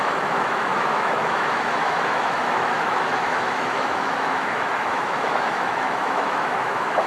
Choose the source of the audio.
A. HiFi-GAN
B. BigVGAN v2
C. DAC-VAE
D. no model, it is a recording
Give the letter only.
C